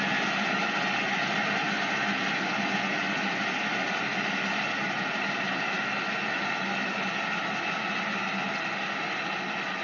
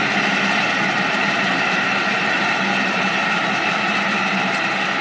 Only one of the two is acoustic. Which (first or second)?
first